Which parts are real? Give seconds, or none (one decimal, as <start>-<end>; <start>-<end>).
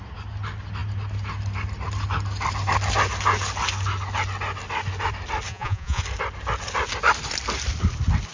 0.0-5.5; 6.0-8.3